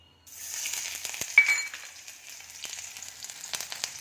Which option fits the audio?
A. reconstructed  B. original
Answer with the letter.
B